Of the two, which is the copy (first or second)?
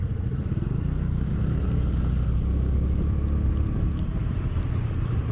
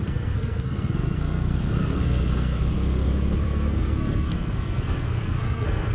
second